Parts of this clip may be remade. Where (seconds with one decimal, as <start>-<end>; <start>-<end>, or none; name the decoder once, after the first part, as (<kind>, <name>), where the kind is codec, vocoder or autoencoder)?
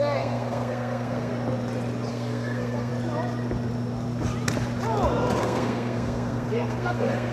0.0-1.3 (codec, SNAC); 2.1-2.9; 5.4-7.3